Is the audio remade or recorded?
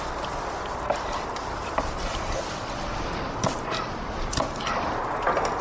recorded